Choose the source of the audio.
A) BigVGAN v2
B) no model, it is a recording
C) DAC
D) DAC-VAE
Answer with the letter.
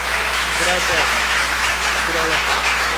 D